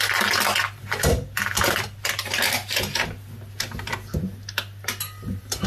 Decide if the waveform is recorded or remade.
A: recorded